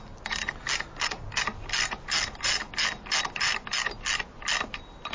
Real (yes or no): yes